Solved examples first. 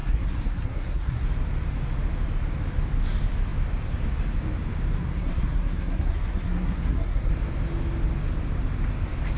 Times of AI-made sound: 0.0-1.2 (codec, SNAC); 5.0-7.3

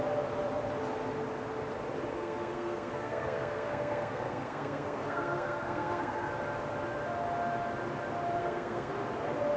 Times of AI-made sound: 2.1-6.3 (codec, SNAC); 8.4-8.9

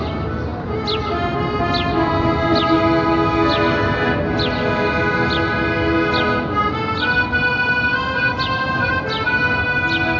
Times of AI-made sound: none

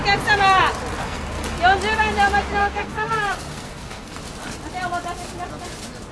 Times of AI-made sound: 1.0-1.6 (codec, SNAC); 2.6-4.2

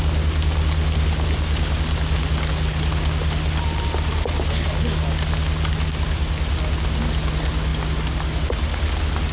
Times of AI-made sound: none

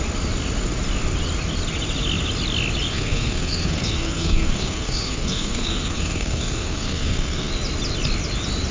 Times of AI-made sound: 2.9-7.5 (codec, SNAC)

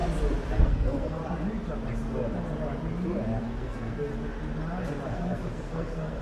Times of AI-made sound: 0.6-1.2 (codec, SNAC); 3.4-4.1; 5.1-6.2